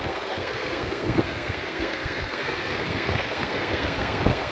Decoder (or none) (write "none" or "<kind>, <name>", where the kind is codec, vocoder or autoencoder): codec, SNAC